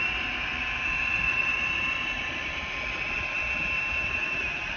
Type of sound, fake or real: fake